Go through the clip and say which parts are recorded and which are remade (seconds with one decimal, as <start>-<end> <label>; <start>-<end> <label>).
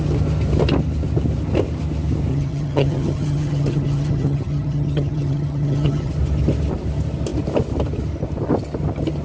0.0-2.3 recorded; 2.3-6.1 remade; 6.1-9.2 recorded